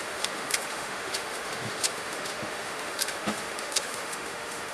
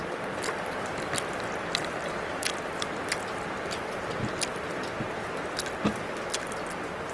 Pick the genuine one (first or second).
second